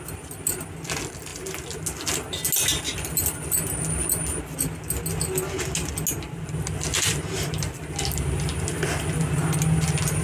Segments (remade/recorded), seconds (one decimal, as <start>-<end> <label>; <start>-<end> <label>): 0.0-10.2 recorded